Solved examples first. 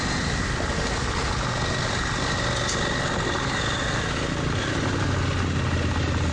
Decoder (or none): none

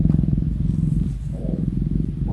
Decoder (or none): none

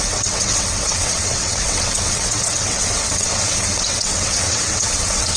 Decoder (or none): vocoder, WaveNeXt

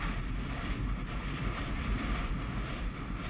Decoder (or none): none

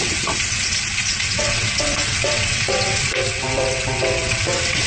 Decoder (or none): vocoder, WaveNeXt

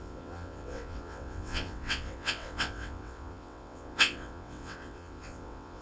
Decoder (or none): vocoder, WaveNeXt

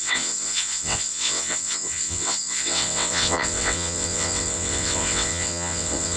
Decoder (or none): vocoder, WaveNeXt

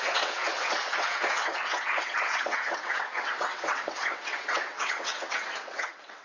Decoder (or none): vocoder, WaveNeXt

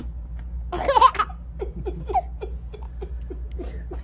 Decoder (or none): none